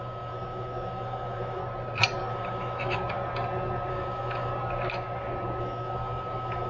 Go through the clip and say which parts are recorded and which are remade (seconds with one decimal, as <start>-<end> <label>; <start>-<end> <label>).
0.0-1.6 remade; 1.6-2.3 recorded; 2.3-3.0 remade; 3.0-3.9 recorded; 3.9-4.5 remade; 4.5-5.6 recorded; 5.6-6.7 remade